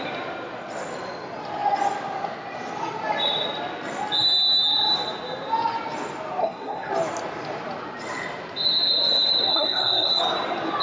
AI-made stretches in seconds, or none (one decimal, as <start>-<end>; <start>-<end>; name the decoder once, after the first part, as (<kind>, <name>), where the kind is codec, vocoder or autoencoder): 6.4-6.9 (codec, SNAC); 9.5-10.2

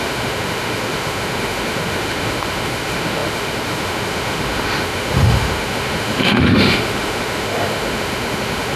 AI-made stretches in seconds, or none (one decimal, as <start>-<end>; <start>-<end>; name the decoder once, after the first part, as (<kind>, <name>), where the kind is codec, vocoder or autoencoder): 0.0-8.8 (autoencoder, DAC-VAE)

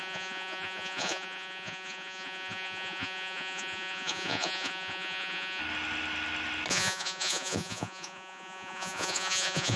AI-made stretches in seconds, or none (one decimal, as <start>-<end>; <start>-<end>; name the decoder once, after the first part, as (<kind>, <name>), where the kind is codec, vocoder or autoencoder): 0.0-5.6 (vocoder, Vocos); 6.7-9.8

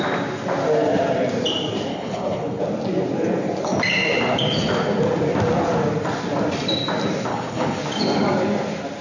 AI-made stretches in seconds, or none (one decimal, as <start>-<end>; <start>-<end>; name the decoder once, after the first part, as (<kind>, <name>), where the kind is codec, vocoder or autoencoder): 1.9-2.6 (codec, HILCodec); 7.3-7.8

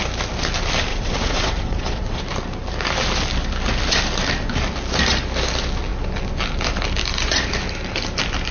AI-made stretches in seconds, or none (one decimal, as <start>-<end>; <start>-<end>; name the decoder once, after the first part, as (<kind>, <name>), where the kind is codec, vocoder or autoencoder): 0.9-2.2 (vocoder, WaveNeXt)

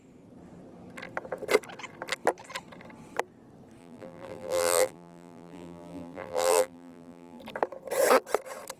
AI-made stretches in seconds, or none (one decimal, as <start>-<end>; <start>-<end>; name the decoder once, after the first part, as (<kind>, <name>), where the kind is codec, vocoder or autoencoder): 3.8-7.4 (vocoder, BigVGAN v2)